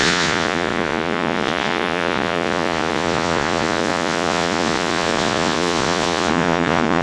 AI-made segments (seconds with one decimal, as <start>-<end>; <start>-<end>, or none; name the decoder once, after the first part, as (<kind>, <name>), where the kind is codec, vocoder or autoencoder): 0.0-7.0 (vocoder, Vocos)